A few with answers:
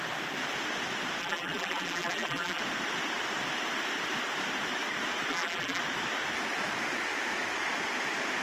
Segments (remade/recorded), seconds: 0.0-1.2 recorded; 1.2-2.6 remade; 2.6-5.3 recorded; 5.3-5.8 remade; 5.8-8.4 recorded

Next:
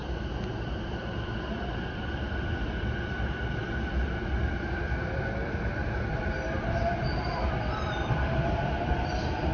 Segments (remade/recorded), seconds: 0.0-5.8 remade; 5.8-6.8 recorded; 6.8-9.5 remade

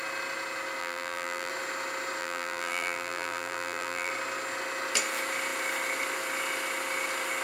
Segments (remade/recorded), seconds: 0.0-0.8 recorded; 0.8-1.5 remade; 1.5-2.2 recorded; 2.2-4.1 remade; 4.1-7.4 recorded

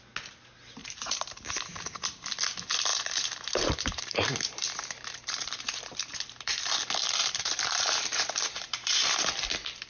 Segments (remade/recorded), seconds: 0.0-0.8 recorded; 0.8-2.3 remade; 2.3-2.9 recorded; 2.9-6.7 remade; 6.7-7.2 recorded; 7.2-9.3 remade; 9.3-9.9 recorded

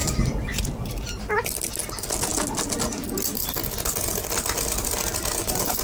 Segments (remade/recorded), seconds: 0.0-1.3 remade; 1.3-5.8 recorded

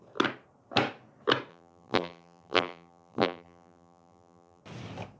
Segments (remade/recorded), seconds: 0.0-1.5 recorded; 1.5-4.6 remade; 4.6-5.2 recorded